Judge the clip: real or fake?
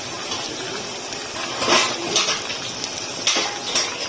real